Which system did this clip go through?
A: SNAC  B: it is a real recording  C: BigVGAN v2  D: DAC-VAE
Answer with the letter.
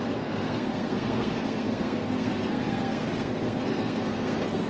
A